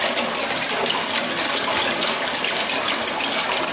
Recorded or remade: recorded